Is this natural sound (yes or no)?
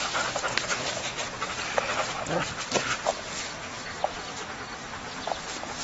yes